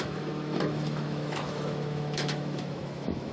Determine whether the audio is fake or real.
fake